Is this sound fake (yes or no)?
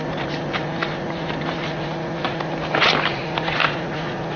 no